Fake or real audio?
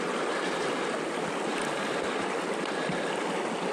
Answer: real